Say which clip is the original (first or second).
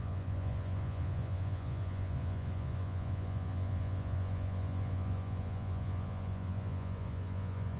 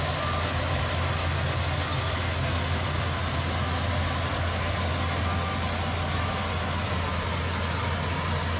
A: second